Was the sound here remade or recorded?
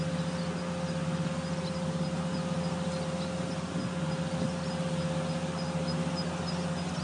recorded